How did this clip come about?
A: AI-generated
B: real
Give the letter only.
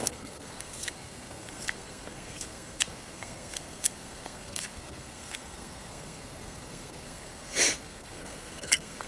A